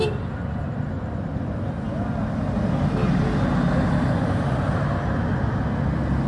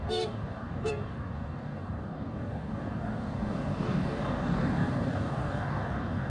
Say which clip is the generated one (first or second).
second